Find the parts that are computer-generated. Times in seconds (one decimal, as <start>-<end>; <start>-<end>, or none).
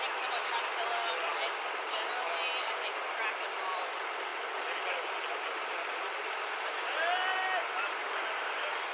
none